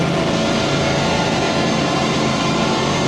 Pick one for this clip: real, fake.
real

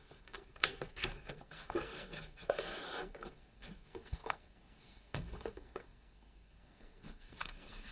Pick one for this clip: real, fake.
fake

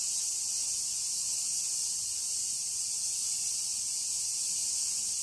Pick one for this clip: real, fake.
real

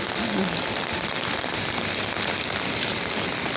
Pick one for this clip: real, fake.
real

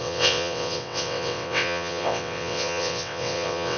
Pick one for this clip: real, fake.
fake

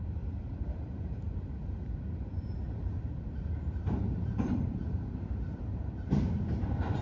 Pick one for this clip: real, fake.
fake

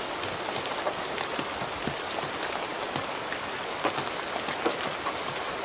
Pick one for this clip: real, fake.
real